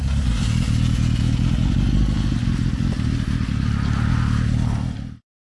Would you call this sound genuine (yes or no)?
yes